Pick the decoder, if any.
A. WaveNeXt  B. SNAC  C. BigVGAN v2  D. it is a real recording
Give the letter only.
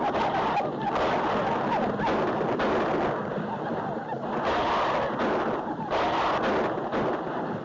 D